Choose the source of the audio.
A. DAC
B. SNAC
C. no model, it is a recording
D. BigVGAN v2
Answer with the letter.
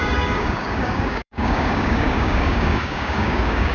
A